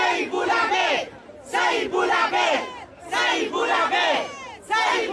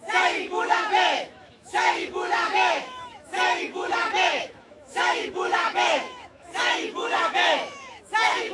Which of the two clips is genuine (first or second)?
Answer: first